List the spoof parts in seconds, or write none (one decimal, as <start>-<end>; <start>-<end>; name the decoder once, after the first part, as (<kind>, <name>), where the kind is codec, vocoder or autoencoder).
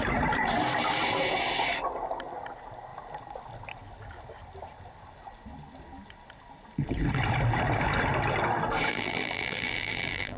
8.9-10.4 (vocoder, BigVGAN v2)